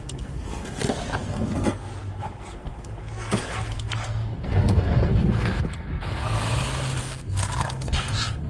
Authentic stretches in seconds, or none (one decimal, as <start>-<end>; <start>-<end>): 6.4-7.0